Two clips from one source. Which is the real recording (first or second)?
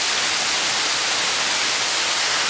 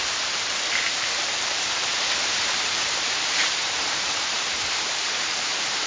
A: first